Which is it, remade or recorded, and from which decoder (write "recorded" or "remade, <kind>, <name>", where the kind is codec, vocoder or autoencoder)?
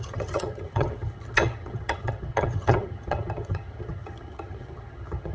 remade, vocoder, HiFi-GAN